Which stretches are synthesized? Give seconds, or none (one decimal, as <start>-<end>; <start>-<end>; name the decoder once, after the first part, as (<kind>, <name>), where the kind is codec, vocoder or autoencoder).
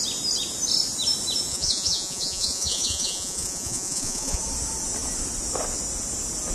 1.5-4.4 (vocoder, Vocos)